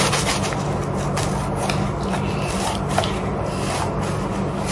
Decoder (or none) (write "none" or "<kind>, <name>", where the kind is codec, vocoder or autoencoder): none